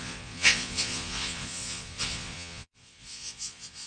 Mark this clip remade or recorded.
remade